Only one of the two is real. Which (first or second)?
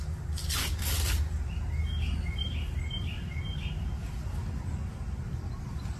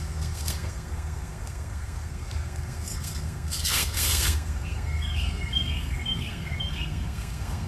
first